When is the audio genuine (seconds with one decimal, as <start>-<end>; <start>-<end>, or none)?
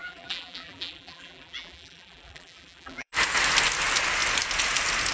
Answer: 3.1-5.1